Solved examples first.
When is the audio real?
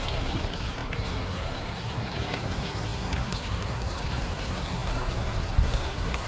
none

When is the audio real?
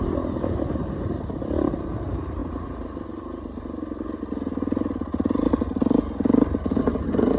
1.4-7.4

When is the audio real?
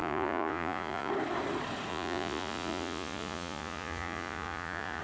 1.1-1.9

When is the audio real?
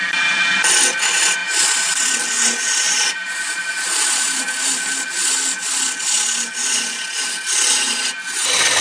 0.0-3.2; 5.1-8.8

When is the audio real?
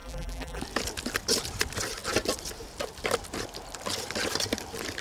0.6-5.0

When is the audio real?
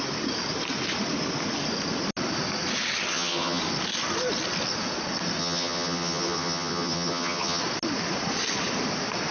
0.0-3.1; 3.6-5.4; 7.6-9.3